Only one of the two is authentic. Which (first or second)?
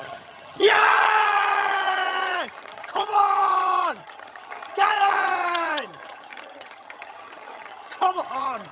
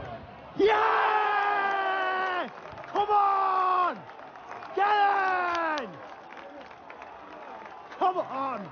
second